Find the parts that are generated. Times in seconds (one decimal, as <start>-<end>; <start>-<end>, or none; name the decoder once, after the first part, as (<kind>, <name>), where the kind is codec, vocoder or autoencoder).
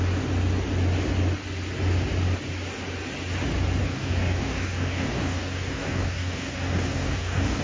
3.8-7.6 (codec, DAC)